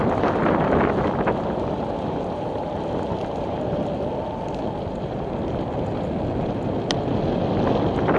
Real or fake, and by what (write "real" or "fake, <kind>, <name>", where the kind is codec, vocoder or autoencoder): real